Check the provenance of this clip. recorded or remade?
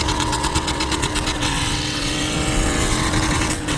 remade